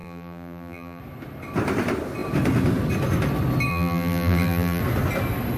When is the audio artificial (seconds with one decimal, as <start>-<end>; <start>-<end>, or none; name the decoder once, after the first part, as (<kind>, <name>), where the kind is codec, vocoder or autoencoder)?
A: 0.0-1.0 (vocoder, BigVGAN v2); 3.7-4.8